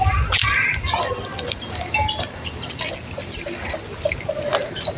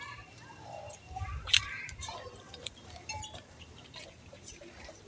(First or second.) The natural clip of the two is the first